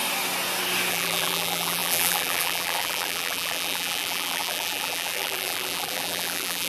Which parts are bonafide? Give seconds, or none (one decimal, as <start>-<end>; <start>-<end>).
0.0-0.9